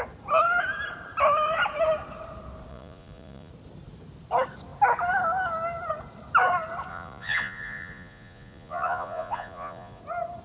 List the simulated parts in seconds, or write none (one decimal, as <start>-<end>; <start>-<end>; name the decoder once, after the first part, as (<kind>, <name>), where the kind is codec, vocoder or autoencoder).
2.7-3.5 (vocoder, Vocos); 6.9-10.0